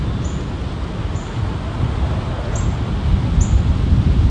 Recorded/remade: recorded